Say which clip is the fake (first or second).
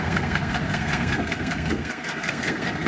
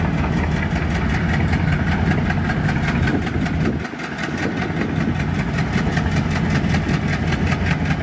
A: first